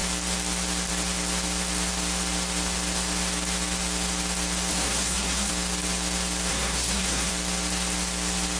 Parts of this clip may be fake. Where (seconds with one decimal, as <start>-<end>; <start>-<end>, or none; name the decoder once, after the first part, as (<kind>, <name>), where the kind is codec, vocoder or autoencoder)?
4.7-5.5 (codec, SNAC); 6.5-7.3